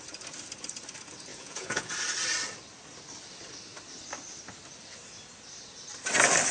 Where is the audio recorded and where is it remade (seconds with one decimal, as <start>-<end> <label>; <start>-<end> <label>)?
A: 0.0-1.3 recorded; 1.3-1.9 remade; 1.9-6.5 recorded